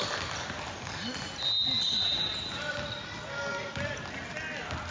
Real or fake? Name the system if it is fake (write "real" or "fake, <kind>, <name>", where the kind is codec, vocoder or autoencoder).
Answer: real